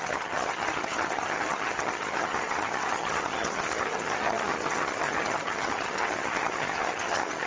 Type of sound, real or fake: fake